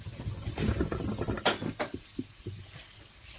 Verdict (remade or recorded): recorded